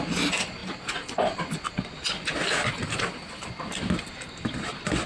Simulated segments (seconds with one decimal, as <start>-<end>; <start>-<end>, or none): none